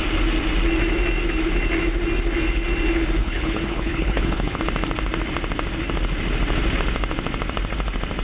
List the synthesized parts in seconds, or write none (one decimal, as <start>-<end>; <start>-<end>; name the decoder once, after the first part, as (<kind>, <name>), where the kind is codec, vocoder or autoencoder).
3.2-4.6 (codec, HILCodec)